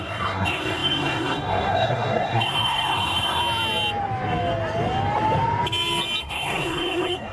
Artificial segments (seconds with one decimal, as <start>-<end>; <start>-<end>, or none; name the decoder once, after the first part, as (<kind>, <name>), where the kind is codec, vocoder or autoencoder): 0.0-3.4 (codec, SNAC); 6.2-7.3